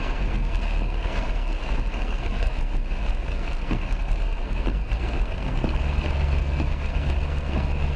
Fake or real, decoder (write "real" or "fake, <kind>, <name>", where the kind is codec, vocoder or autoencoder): fake, codec, SNAC